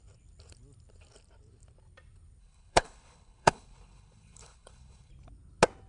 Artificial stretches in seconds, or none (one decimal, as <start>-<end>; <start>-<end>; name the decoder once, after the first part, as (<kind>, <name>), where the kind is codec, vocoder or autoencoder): 2.4-5.1 (codec, HILCodec)